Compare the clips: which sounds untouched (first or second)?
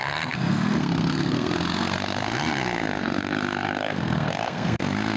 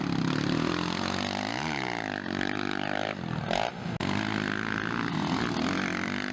second